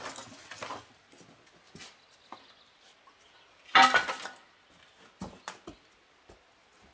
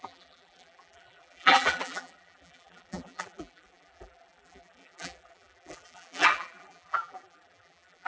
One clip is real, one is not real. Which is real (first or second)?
first